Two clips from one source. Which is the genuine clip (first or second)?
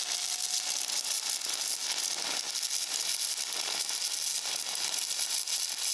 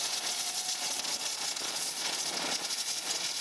first